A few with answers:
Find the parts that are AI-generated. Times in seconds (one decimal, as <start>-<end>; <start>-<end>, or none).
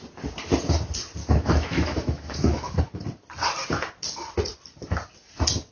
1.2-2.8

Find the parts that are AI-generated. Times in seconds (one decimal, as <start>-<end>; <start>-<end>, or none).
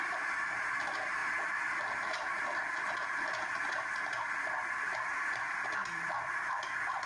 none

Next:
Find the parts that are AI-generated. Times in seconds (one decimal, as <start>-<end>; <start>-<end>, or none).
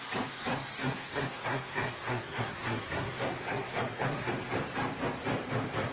0.8-4.3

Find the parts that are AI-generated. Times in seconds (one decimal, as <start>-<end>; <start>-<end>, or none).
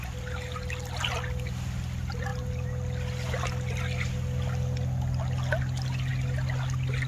none